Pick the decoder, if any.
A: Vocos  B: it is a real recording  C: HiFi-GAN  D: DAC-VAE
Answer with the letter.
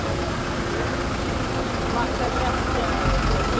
B